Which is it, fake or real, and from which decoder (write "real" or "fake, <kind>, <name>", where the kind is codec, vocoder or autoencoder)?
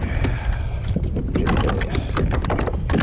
real